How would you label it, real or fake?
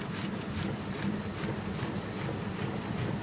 real